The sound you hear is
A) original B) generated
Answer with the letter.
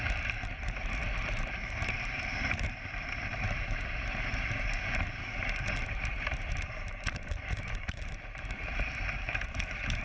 B